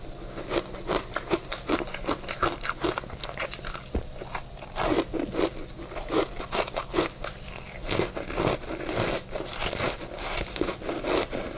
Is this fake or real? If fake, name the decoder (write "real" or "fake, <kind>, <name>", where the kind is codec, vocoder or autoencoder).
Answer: real